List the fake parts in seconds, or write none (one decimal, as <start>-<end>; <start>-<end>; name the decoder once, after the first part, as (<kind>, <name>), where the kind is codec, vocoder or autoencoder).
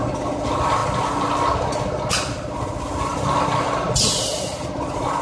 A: none